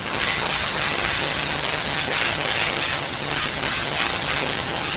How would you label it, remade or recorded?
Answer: remade